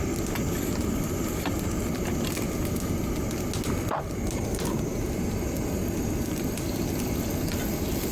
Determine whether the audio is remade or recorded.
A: recorded